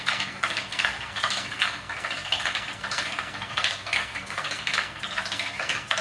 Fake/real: fake